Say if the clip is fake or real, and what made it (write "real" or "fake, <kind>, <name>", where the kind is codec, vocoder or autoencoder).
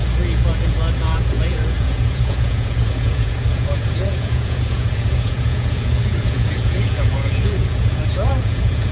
fake, vocoder, Vocos